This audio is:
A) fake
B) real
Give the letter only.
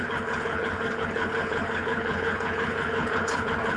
A